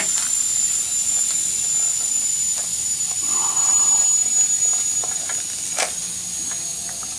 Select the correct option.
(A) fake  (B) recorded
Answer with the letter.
B